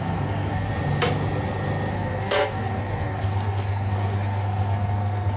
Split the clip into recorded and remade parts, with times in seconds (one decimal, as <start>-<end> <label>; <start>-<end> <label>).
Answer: 0.0-0.7 remade; 0.7-1.9 recorded; 1.9-5.4 remade